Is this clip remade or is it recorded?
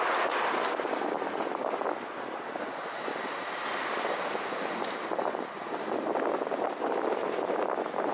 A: recorded